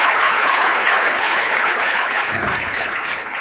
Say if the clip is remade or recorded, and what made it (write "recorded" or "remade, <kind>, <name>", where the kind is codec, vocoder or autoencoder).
remade, codec, HILCodec